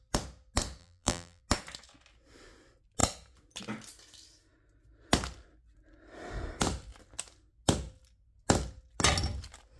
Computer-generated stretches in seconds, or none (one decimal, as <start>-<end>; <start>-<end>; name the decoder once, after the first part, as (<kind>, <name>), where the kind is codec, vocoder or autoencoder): 0.8-1.4 (vocoder, BigVGAN v2)